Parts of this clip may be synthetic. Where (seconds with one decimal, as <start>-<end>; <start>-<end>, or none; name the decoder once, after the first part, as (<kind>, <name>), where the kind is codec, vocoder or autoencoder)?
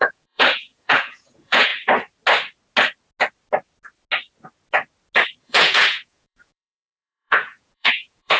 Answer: 0.0-1.7 (vocoder, Vocos); 5.4-8.4